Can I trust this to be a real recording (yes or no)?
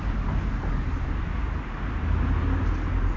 yes